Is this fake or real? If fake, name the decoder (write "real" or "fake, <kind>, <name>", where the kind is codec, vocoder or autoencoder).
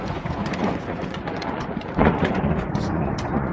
fake, vocoder, Vocos